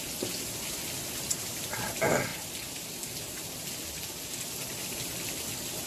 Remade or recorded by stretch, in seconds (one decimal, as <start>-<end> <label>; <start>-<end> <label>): 0.0-5.9 recorded